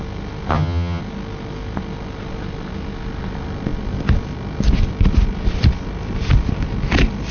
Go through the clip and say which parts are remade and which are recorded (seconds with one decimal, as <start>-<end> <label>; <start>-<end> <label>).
0.0-0.5 recorded; 0.5-1.0 remade; 1.0-7.3 recorded